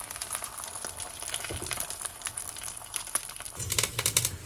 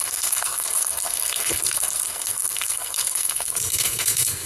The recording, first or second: first